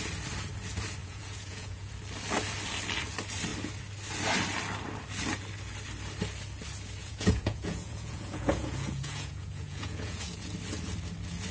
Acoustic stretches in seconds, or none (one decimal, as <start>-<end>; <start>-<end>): 0.0-1.0; 1.9-7.0; 10.5-11.5